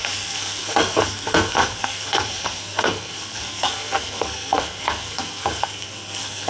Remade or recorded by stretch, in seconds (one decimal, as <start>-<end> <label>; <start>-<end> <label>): 0.0-6.5 remade